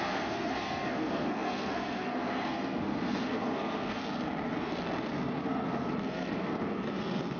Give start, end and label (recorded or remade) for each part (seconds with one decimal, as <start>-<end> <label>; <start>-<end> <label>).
0.0-4.0 remade; 4.0-4.6 recorded; 4.6-7.4 remade